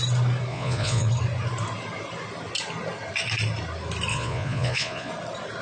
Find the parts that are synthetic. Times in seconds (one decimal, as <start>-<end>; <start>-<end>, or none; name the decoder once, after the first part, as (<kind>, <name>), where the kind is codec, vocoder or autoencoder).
0.5-1.1 (vocoder, Vocos); 4.1-5.1